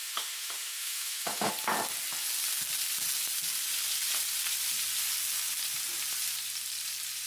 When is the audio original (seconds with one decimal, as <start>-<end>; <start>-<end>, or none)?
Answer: 1.5-7.3